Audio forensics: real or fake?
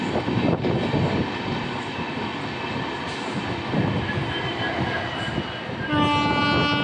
real